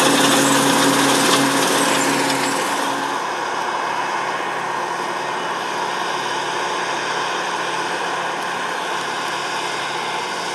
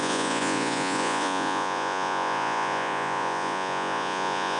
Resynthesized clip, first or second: second